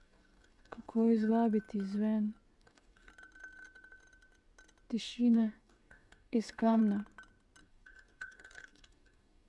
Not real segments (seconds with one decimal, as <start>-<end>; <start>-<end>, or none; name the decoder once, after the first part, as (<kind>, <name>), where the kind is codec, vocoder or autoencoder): 0.0-1.3 (codec, DAC); 2.6-3.1; 5.0-6.8; 7.6-9.5